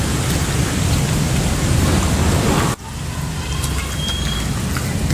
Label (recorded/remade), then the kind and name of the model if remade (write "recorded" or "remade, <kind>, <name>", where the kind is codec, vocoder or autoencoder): remade, vocoder, BigVGAN v2